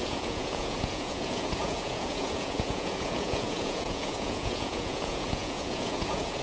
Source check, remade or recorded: remade